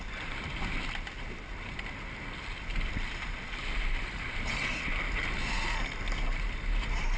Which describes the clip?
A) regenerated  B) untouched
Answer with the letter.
B